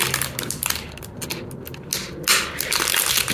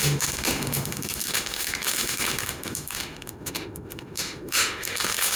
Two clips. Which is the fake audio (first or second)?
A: second